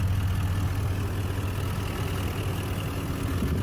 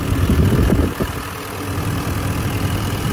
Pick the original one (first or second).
first